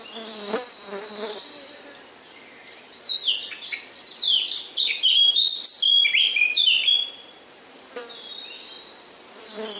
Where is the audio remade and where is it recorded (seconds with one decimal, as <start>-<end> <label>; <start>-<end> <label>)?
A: 0.0-6.8 remade; 6.8-7.7 recorded; 7.7-9.8 remade